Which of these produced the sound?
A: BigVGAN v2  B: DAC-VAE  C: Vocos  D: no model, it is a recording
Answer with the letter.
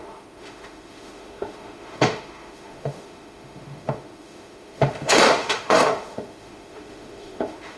B